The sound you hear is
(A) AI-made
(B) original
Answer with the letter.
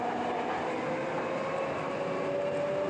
B